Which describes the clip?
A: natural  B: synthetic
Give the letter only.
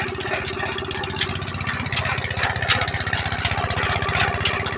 A